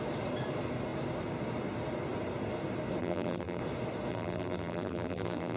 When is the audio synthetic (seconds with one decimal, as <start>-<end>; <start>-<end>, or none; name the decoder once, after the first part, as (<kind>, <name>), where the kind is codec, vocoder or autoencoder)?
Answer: 3.0-3.6 (vocoder, BigVGAN v2); 4.1-5.6